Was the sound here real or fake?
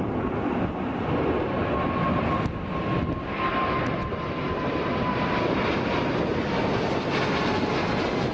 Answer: real